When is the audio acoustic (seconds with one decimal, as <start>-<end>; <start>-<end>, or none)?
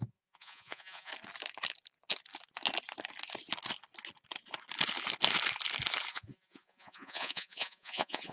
1.1-6.1